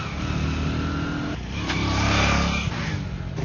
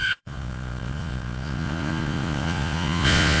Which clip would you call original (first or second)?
first